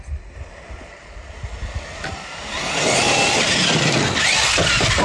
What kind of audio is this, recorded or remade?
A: recorded